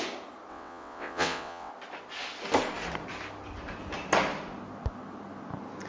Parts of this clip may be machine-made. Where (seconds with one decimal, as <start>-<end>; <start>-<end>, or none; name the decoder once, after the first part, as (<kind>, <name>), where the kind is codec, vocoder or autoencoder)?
0.5-1.7 (vocoder, WaveNeXt)